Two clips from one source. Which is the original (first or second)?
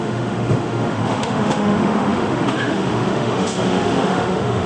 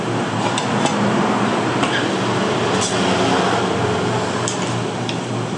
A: second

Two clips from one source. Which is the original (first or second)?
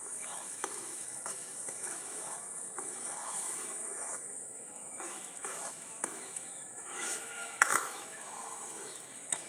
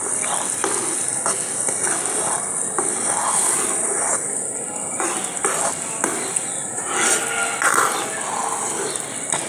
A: second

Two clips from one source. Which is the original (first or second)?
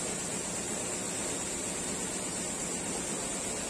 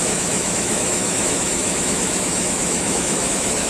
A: first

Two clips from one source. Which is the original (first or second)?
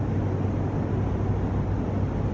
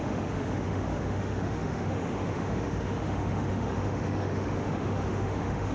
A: first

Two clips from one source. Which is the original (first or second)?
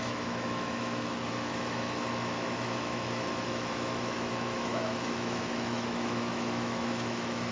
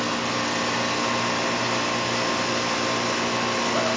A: second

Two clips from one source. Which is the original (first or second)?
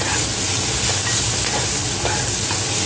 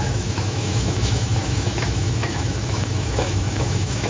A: first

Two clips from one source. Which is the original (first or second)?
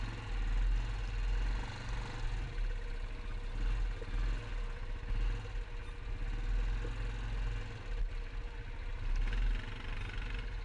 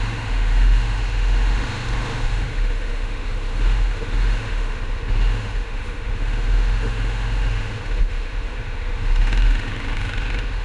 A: first